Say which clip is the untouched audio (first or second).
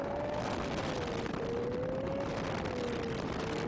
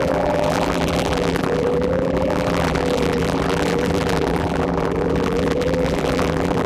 first